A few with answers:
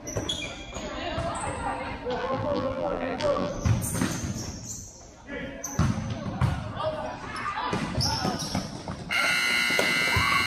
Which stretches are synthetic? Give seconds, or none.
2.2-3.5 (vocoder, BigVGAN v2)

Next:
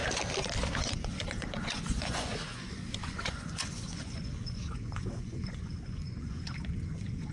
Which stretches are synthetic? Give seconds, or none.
0.8-7.3 (vocoder, Vocos)

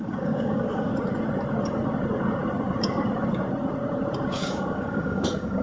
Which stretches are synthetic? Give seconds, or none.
0.0-0.9 (codec, DAC); 4.3-5.6

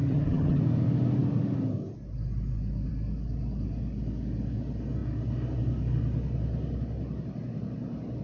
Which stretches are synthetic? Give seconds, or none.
0.0-0.6 (vocoder, HiFi-GAN)